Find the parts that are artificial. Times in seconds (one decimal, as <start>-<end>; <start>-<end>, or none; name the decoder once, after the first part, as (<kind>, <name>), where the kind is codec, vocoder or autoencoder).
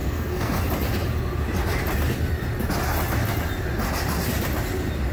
0.0-0.6 (codec, SNAC)